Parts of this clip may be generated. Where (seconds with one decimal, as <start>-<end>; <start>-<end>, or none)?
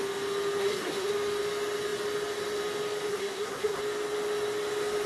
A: 0.6-1.1; 3.1-3.8